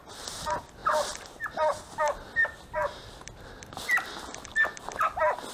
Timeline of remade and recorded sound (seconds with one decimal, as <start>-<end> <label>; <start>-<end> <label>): 0.0-5.5 recorded